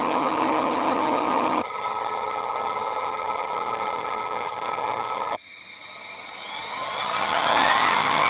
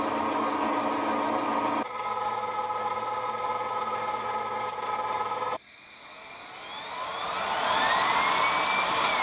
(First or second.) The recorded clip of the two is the second